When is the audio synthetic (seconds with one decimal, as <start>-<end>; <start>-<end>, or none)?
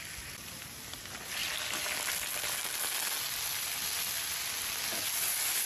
none